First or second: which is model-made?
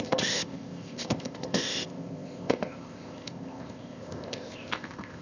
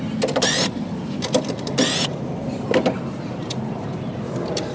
first